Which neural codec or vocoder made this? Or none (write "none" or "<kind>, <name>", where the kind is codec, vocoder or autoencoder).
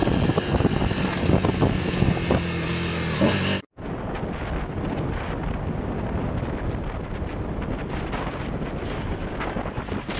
none